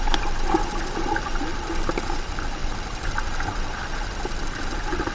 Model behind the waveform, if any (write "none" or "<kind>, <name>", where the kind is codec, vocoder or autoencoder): none